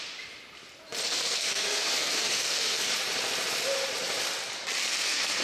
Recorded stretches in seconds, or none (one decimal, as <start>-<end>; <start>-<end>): 0.0-1.0; 2.9-4.8